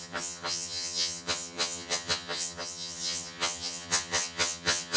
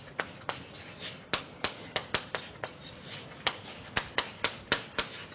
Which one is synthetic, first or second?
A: first